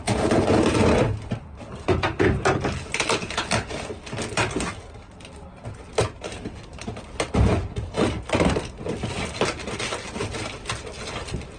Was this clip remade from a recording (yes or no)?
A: no